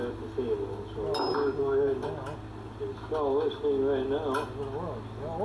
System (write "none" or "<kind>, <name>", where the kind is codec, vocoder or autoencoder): none